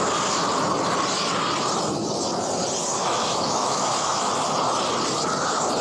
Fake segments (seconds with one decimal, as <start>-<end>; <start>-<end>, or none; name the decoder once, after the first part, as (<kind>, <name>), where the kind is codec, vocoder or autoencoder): 3.0-4.3 (autoencoder, DAC-VAE)